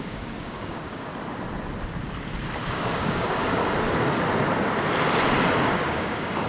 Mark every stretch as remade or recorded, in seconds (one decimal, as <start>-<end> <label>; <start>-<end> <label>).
0.0-1.1 remade; 1.1-2.7 recorded; 2.7-3.6 remade; 3.6-5.7 recorded; 5.7-6.5 remade